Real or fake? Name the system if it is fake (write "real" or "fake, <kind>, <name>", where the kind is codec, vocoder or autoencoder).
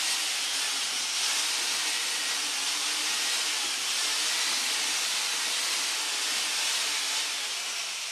real